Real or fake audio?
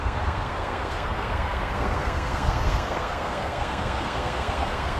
fake